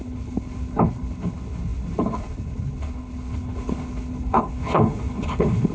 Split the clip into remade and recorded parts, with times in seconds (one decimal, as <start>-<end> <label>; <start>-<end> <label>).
0.0-5.7 remade